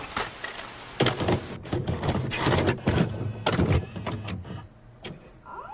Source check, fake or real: real